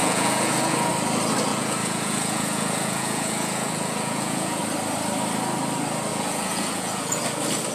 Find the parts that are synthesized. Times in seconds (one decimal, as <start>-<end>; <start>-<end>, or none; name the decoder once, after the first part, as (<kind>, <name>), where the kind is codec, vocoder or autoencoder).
0.0-0.9 (vocoder, Vocos); 1.5-4.6; 6.1-7.2